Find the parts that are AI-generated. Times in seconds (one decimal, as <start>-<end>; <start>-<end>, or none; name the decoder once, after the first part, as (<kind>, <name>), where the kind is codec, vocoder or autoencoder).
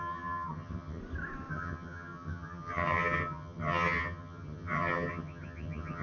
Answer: 0.0-1.0 (vocoder, HiFi-GAN); 1.5-6.0